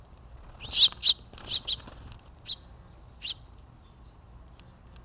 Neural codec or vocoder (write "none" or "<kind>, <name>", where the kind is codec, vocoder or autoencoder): none